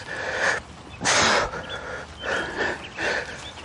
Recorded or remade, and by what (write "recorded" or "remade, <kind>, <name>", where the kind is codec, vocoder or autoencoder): recorded